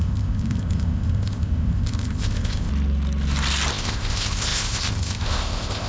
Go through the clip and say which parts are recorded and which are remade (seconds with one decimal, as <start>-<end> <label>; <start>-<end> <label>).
0.0-2.7 remade; 2.7-3.7 recorded; 3.7-5.9 remade